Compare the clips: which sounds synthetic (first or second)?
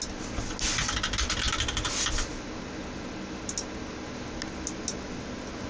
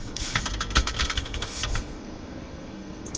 second